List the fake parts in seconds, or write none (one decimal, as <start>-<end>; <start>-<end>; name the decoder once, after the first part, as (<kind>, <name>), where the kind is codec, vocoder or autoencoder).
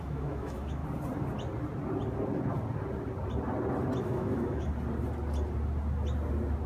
0.0-0.8 (autoencoder, DAC-VAE); 4.0-4.7